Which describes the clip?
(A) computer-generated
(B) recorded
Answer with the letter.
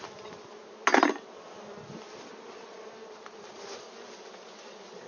B